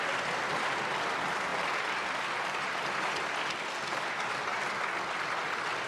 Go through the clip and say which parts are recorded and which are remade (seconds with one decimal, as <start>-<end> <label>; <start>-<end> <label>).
0.0-4.5 recorded; 4.5-5.2 remade; 5.2-5.9 recorded